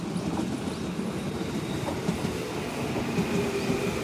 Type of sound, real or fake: real